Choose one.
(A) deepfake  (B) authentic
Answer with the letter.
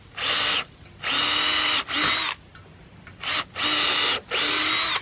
B